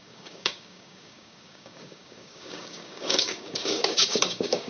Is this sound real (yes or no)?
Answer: no